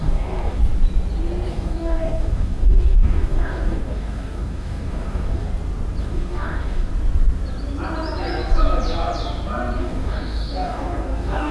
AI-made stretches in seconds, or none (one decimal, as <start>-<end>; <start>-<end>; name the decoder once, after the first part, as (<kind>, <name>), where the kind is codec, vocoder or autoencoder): 0.0-0.6 (codec, DAC); 1.5-5.5; 6.0-6.9; 9.8-11.5